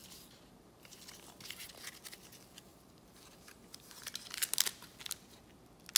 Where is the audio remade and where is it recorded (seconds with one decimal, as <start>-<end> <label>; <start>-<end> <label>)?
0.0-1.0 remade; 1.0-2.7 recorded; 2.7-4.1 remade; 4.1-6.0 recorded